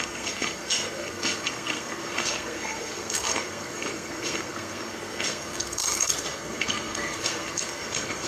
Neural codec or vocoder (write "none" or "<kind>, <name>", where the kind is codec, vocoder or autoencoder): codec, SNAC